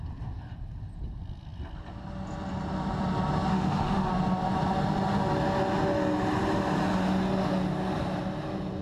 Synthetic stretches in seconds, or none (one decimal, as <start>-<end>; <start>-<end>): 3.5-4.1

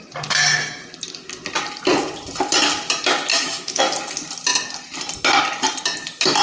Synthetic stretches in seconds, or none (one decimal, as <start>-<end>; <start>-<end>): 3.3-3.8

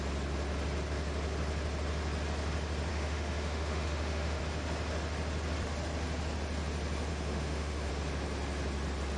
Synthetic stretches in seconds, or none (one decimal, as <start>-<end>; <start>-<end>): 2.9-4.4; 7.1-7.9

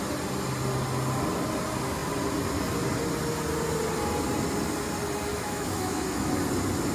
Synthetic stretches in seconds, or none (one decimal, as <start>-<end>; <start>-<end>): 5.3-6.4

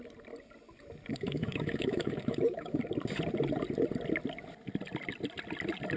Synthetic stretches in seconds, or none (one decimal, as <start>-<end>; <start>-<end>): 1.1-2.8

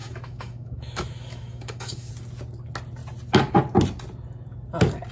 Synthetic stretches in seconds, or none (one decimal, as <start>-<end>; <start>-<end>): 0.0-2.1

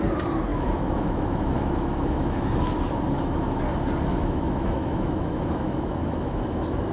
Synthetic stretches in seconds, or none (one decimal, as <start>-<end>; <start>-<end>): 0.5-3.6; 4.1-6.9

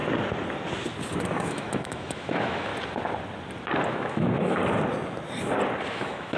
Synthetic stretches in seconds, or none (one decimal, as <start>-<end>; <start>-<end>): 1.3-2.7; 3.9-4.6; 5.9-6.4